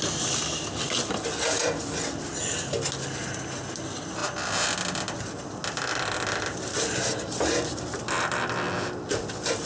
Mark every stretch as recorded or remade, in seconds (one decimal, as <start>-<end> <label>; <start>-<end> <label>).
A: 0.0-9.7 recorded